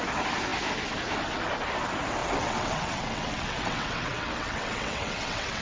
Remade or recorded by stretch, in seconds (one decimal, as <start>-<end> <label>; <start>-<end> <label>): 0.0-2.2 recorded; 2.2-5.6 remade